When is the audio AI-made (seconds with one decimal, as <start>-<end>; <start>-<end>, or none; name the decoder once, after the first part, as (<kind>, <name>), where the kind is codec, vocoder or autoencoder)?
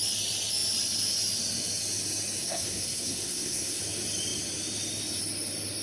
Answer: 2.4-3.8 (codec, SNAC)